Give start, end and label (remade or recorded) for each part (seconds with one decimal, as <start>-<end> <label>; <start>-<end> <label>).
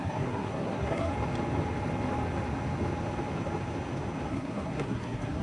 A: 0.0-1.1 remade; 1.1-4.3 recorded; 4.3-5.4 remade